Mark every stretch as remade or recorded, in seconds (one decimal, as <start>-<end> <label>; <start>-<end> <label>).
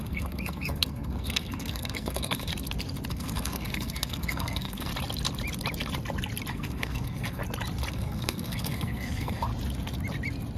0.0-2.5 remade; 2.5-3.1 recorded; 3.1-4.9 remade; 4.9-6.5 recorded; 6.5-7.4 remade; 7.4-7.9 recorded; 7.9-9.5 remade; 9.5-10.6 recorded